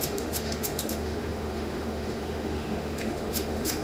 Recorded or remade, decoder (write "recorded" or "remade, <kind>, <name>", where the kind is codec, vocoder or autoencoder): remade, autoencoder, DAC-VAE